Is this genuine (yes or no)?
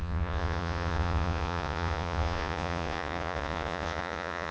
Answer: no